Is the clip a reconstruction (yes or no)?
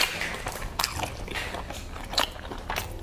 no